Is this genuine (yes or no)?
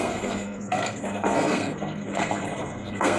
no